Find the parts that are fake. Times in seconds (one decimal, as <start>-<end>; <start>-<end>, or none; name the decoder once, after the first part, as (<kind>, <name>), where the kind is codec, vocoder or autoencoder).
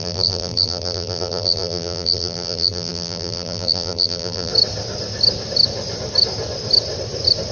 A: 0.0-4.5 (vocoder, BigVGAN v2)